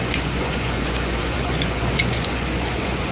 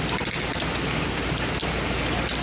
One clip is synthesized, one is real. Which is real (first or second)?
second